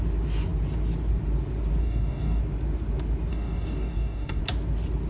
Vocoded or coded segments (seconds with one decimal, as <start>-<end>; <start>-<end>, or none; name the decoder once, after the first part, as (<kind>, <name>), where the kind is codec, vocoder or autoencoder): 1.8-2.4 (codec, DAC); 3.3-4.4